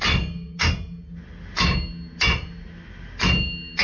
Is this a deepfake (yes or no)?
no